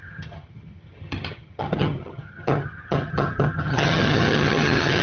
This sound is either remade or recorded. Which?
remade